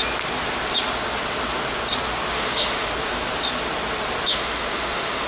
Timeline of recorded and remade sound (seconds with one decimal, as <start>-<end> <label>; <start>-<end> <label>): 0.0-2.3 recorded; 2.3-2.9 remade; 2.9-4.3 recorded; 4.3-5.3 remade